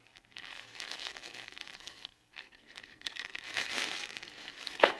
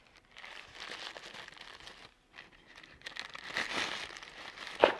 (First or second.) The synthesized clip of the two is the first